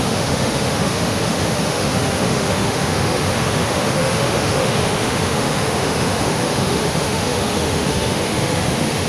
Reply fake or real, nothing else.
fake